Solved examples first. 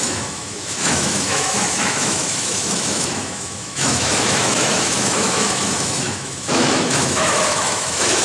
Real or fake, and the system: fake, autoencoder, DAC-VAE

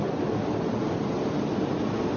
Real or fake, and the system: real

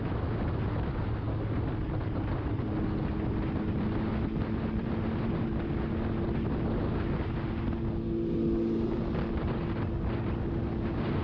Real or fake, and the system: real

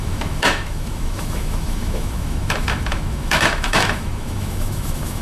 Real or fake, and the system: fake, autoencoder, DAC-VAE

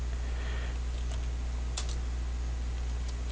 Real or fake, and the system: real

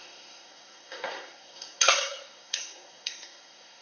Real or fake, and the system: fake, codec, SNAC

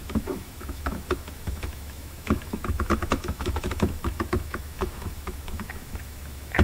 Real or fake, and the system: fake, autoencoder, DAC-VAE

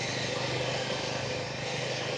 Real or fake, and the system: fake, codec, DAC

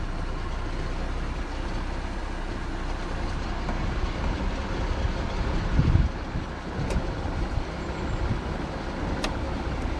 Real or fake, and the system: real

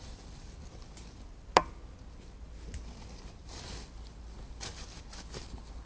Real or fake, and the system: real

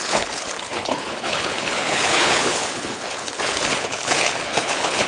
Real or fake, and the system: fake, codec, HILCodec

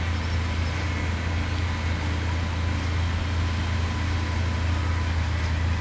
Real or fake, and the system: real